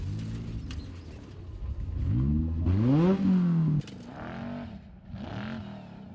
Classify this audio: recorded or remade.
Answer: recorded